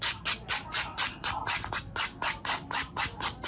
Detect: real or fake real